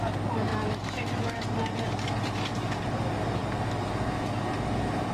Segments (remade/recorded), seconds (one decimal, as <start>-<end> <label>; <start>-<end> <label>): 0.0-0.5 recorded; 0.5-1.4 remade; 1.4-5.1 recorded